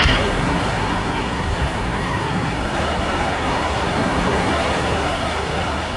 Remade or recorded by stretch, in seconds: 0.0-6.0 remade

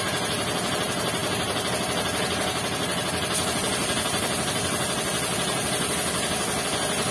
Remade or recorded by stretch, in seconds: 0.0-7.1 recorded